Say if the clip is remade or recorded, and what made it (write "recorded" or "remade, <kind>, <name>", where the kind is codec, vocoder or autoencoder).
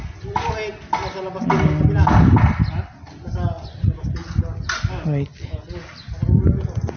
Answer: recorded